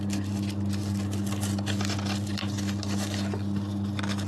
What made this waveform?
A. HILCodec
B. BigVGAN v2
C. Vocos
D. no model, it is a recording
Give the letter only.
D